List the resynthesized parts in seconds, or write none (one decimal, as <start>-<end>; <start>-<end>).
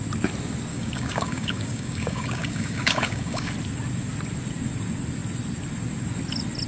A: 0.7-3.5